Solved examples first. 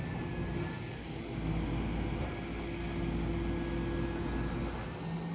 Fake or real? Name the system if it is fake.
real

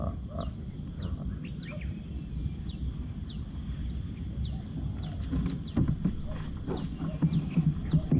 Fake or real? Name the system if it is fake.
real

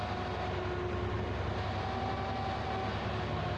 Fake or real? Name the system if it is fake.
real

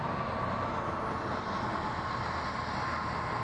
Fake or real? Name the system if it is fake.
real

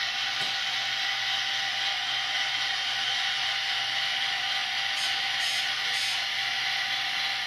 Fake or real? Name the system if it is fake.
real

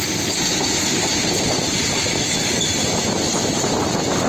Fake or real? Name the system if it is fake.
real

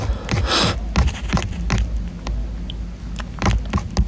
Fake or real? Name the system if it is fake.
real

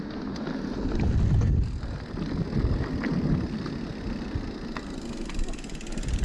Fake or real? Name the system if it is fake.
real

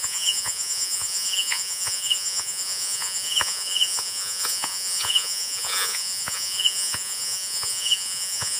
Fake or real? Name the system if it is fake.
fake, vocoder, Vocos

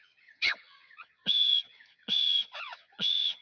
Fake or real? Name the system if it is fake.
fake, vocoder, Vocos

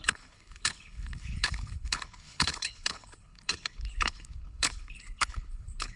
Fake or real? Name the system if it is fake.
fake, codec, HILCodec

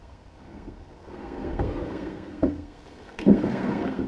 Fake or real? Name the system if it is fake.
fake, codec, SNAC